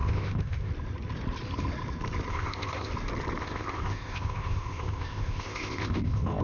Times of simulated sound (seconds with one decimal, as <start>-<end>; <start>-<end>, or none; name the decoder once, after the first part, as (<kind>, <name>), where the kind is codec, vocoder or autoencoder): 0.0-0.7 (codec, ZipCodec); 2.3-2.9; 3.4-6.4